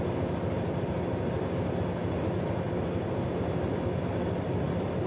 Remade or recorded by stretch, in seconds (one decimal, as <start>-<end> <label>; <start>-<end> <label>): 0.0-5.1 recorded

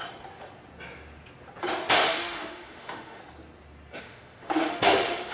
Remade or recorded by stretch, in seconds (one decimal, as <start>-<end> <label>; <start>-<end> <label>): 0.0-1.9 recorded; 1.9-3.2 remade; 3.2-4.0 recorded; 4.0-5.3 remade

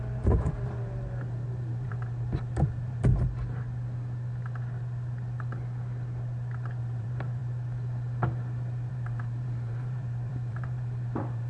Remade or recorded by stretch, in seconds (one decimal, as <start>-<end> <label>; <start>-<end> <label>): 0.0-3.1 remade; 3.1-6.8 recorded; 6.8-7.4 remade; 7.4-8.9 recorded; 8.9-11.5 remade

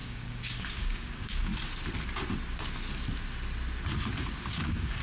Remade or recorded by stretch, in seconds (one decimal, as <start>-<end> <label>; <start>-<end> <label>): 0.0-1.5 remade; 1.5-4.5 recorded; 4.5-5.0 remade

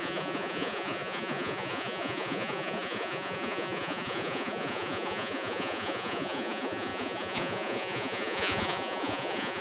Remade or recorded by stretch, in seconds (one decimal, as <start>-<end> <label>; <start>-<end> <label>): 0.0-9.6 remade

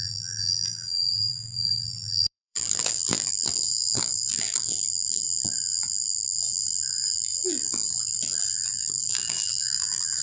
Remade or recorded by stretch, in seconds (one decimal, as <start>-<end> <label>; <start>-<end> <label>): 0.0-10.2 remade